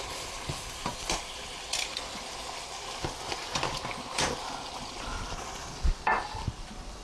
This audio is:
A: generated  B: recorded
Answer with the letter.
B